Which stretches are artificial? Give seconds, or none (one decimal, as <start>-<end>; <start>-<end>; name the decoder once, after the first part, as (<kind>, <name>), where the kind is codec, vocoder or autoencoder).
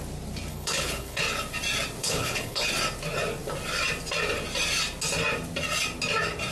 0.5-1.2 (codec, HILCodec); 2.0-2.7